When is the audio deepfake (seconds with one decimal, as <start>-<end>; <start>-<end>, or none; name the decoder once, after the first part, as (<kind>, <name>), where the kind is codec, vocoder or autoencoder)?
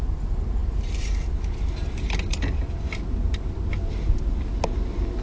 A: none